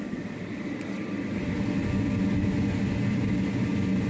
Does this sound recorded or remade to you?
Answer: recorded